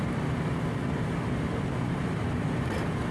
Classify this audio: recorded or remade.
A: remade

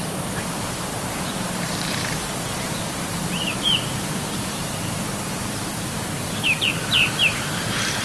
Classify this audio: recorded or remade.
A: remade